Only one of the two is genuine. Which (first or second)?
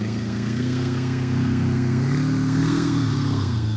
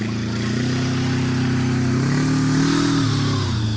second